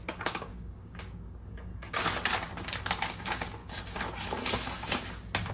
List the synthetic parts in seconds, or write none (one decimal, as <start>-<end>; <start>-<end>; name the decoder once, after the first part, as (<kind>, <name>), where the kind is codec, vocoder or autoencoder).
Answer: 0.0-1.7 (codec, DAC); 2.8-3.6